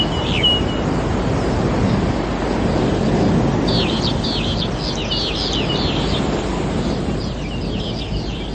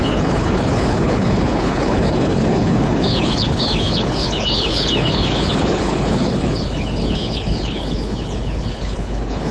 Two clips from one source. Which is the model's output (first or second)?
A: second